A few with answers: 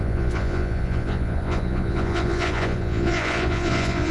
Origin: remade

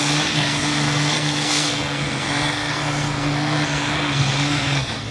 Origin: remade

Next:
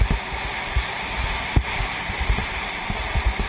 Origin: remade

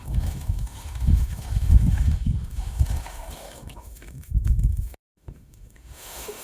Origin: remade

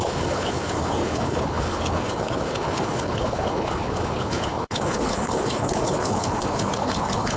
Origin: remade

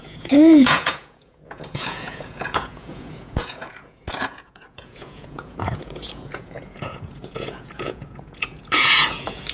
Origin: remade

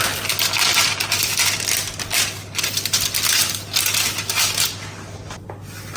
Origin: recorded